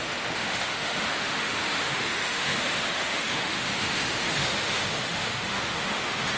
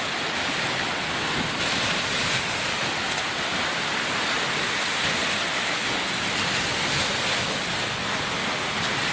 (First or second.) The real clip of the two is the second